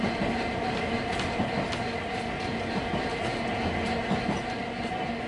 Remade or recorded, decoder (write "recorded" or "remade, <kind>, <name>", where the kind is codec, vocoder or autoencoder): recorded